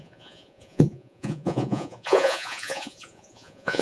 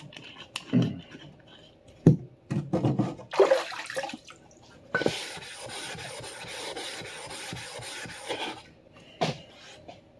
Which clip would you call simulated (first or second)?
first